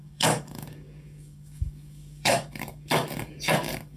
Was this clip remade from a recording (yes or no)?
yes